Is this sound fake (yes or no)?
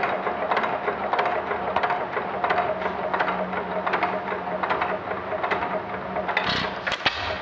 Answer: no